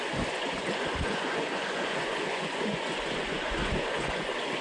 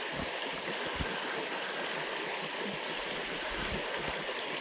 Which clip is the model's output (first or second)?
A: first